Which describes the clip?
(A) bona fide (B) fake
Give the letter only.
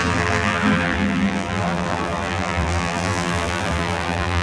B